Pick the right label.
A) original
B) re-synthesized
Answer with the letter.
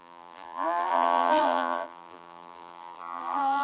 B